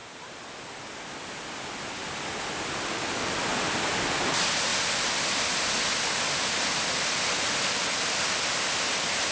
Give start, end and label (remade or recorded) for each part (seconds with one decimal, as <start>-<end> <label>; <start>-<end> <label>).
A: 0.0-9.3 recorded